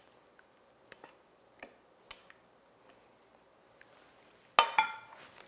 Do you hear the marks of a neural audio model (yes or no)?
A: no